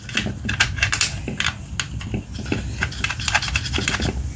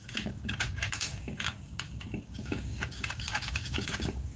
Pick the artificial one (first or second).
second